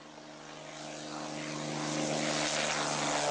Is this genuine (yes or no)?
yes